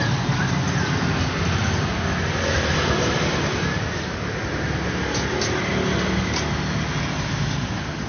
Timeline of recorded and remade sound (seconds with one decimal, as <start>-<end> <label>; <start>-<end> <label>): 0.0-8.1 recorded